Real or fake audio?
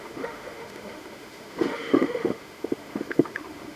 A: fake